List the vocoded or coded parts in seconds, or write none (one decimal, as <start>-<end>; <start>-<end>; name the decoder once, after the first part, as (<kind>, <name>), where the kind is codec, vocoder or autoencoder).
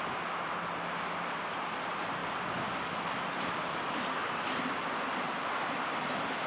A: 2.2-6.1 (vocoder, BigVGAN v2)